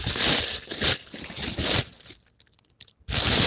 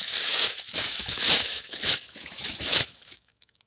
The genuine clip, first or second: first